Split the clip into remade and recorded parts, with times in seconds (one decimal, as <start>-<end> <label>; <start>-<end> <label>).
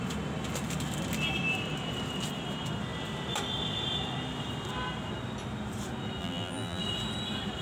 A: 0.0-6.2 recorded; 6.2-6.8 remade; 6.8-7.6 recorded